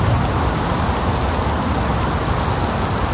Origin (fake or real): real